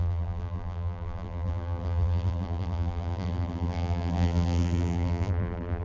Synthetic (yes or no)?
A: yes